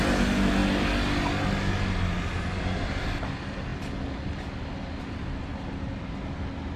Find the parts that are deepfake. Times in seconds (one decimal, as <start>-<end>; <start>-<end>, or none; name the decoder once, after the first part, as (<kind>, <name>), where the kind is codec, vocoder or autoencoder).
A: none

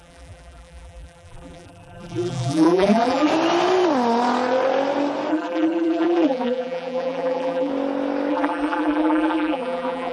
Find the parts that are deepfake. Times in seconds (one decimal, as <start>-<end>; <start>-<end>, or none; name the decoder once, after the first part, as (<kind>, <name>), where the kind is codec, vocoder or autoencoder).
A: 0.0-3.3 (vocoder, BigVGAN v2); 5.3-7.7; 8.3-10.1